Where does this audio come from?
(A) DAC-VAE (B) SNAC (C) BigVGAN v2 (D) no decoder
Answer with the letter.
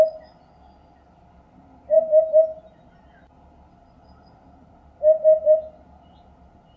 C